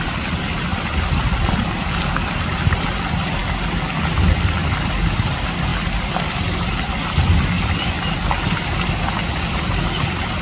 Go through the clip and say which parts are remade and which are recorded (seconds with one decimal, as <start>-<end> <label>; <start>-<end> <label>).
0.0-10.4 remade